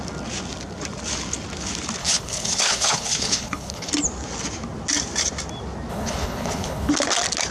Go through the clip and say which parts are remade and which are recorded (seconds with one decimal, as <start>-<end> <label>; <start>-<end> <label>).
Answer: 0.0-2.0 recorded; 2.0-3.9 remade; 3.9-5.9 recorded; 5.9-6.9 remade; 6.9-7.5 recorded